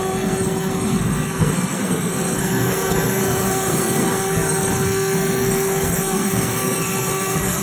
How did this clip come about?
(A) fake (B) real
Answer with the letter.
A